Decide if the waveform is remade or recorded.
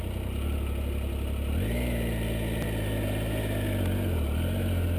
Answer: recorded